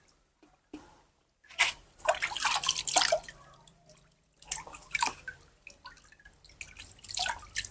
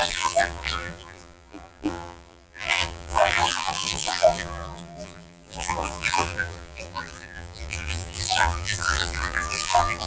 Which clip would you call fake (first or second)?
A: second